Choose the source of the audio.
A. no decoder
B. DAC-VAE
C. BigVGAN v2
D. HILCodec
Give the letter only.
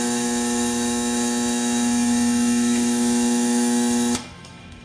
B